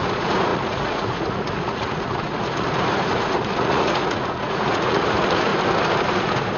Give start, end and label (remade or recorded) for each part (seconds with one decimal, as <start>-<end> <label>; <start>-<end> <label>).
0.0-5.5 remade; 5.5-6.1 recorded; 6.1-6.6 remade